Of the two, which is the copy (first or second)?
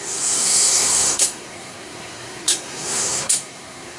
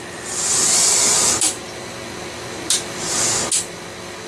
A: first